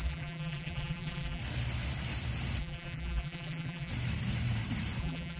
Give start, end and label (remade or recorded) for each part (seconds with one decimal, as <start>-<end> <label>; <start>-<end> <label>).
0.0-1.4 remade; 1.4-2.6 recorded; 2.6-3.9 remade; 3.9-5.0 recorded; 5.0-5.4 remade